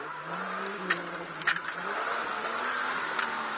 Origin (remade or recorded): remade